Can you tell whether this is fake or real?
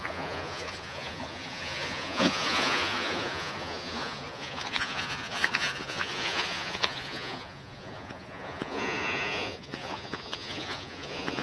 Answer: fake